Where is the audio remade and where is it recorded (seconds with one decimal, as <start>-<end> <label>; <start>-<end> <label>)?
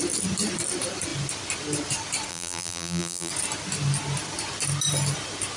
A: 0.0-2.3 recorded; 2.3-3.3 remade; 3.3-5.6 recorded